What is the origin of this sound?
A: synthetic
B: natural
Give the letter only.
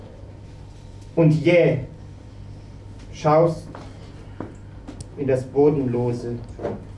B